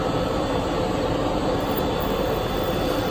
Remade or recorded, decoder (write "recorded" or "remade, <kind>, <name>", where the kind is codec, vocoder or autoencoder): recorded